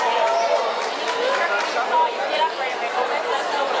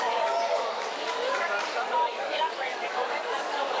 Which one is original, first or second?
first